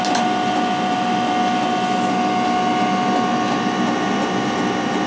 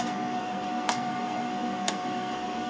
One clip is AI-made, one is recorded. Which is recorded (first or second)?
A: first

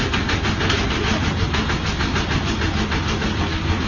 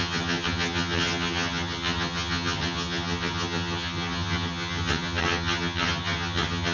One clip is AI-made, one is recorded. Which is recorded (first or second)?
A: first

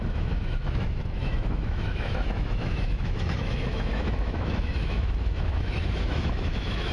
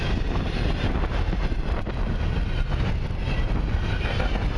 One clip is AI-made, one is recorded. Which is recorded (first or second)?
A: second